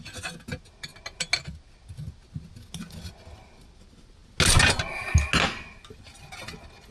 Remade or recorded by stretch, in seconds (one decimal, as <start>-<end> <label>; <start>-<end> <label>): 0.0-6.9 recorded